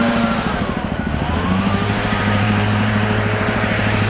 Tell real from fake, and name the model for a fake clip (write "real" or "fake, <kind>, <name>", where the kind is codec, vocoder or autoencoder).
fake, vocoder, BigVGAN v2